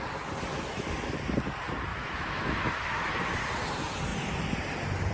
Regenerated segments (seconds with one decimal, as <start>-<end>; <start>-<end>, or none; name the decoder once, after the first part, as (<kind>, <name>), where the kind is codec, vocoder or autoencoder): 0.5-1.3 (autoencoder, DAC-VAE); 1.9-3.1